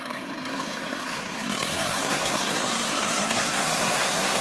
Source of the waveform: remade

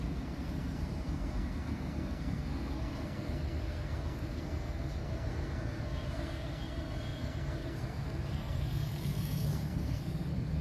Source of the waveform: remade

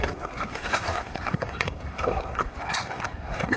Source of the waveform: remade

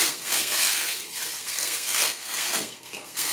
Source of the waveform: remade